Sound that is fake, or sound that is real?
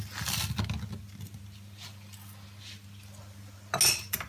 real